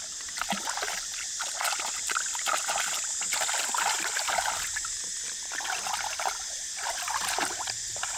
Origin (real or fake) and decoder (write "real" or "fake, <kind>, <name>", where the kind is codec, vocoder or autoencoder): real